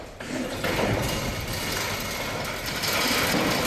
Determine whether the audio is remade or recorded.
recorded